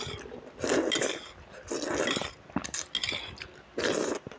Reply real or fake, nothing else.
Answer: real